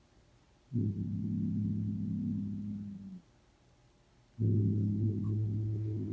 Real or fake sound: real